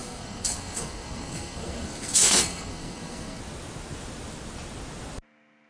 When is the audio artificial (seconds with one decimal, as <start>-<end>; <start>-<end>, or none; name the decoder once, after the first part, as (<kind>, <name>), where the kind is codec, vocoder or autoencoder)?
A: 0.0-3.4 (codec, SNAC)